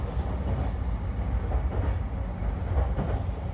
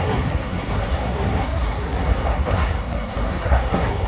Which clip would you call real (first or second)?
first